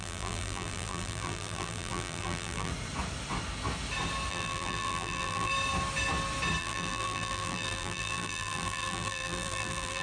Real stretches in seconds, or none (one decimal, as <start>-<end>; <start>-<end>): 2.7-4.3; 5.5-6.6